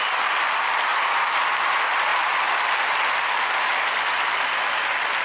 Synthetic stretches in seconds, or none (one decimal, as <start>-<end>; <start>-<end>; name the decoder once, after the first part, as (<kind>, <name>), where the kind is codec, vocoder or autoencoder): none